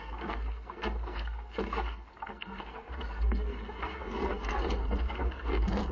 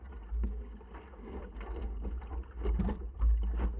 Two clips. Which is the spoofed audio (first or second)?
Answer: first